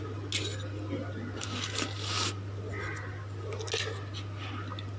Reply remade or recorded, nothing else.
recorded